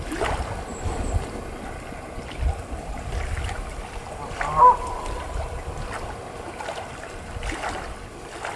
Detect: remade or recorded recorded